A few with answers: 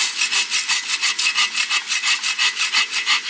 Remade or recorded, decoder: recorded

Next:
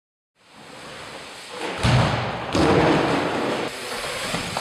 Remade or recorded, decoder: recorded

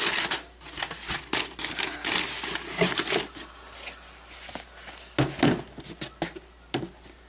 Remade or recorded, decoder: recorded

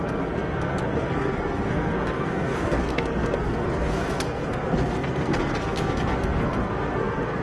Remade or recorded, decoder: remade, codec, SNAC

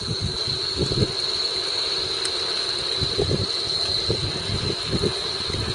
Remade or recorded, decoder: recorded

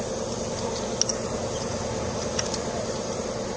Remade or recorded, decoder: recorded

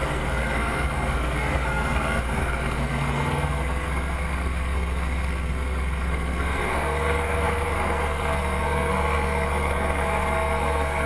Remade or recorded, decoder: remade, codec, SNAC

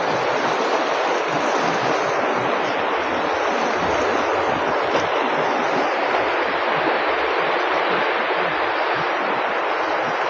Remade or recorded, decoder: recorded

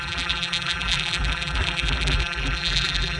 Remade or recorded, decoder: remade, vocoder, BigVGAN v2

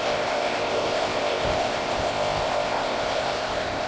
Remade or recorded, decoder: remade, codec, ZipCodec